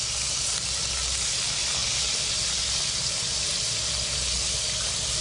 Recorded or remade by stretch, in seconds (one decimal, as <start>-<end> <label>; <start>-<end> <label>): 0.0-5.2 recorded